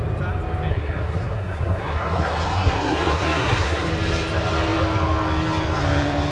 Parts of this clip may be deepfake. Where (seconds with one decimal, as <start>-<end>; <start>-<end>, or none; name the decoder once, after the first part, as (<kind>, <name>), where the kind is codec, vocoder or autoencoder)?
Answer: 0.7-3.9 (codec, SNAC)